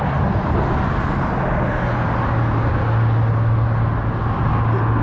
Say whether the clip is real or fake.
real